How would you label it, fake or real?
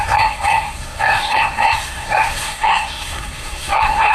fake